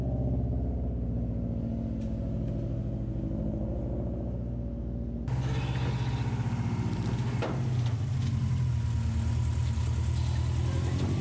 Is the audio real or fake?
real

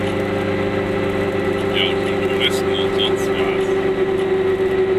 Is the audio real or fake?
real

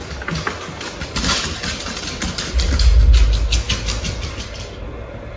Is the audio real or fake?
real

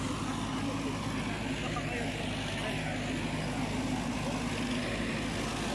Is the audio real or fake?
real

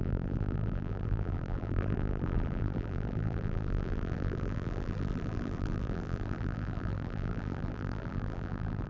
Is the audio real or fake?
fake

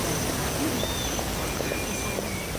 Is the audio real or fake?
real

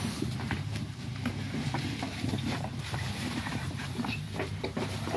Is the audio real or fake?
fake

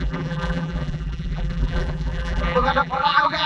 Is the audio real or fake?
fake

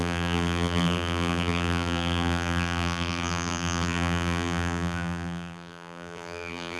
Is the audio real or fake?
fake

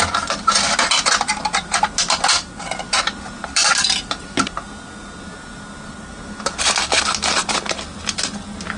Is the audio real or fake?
real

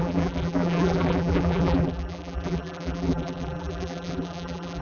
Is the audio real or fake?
fake